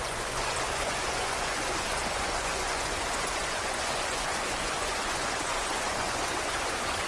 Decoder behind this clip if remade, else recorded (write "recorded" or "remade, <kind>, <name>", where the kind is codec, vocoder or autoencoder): remade, vocoder, Vocos